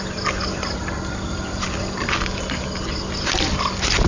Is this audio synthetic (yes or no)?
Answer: no